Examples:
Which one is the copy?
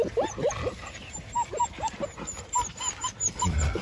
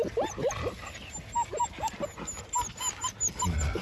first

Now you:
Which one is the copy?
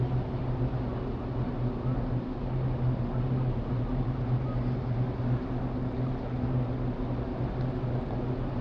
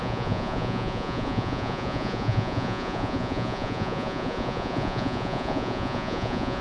second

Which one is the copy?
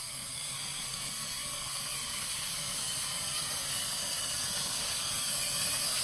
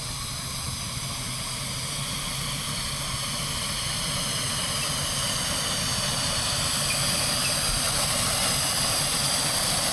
first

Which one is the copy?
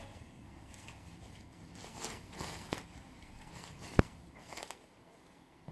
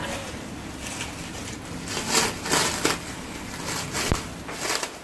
first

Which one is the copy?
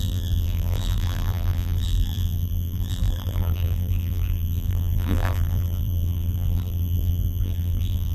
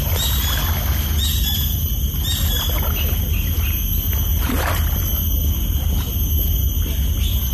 first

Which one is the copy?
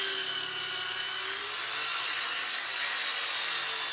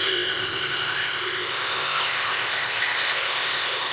second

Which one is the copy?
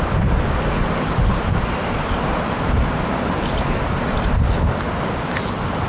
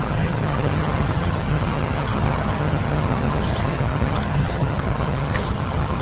second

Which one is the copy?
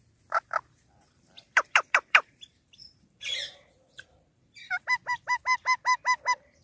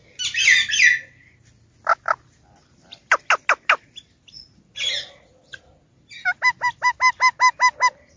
first